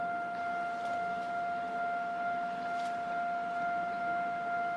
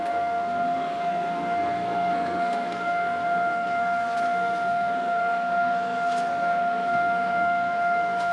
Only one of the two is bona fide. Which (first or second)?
first